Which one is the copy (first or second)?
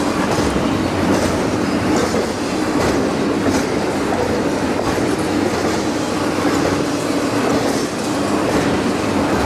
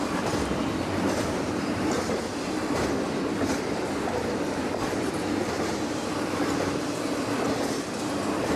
second